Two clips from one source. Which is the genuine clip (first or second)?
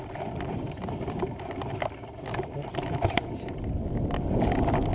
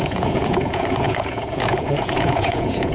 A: first